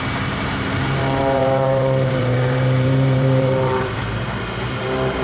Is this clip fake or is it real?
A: fake